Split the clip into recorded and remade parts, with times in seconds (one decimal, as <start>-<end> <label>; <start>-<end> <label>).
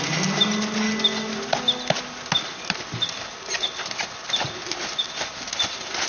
0.0-0.4 remade; 0.4-2.5 recorded; 2.5-6.1 remade